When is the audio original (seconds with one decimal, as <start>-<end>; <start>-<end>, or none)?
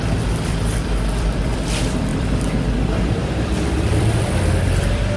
none